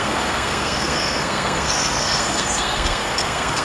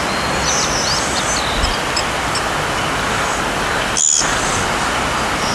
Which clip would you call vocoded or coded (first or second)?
first